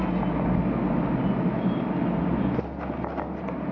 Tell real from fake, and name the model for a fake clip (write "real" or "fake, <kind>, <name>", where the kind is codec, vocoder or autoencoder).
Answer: real